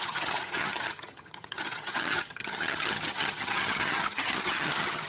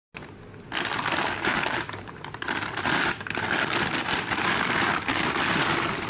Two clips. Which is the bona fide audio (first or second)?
second